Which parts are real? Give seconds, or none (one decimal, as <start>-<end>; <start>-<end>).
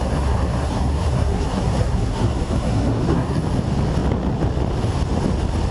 3.4-5.7